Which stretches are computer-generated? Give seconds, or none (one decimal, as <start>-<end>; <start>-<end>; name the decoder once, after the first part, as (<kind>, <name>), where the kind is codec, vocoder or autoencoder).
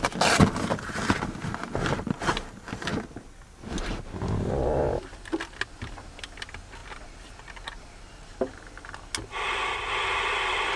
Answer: none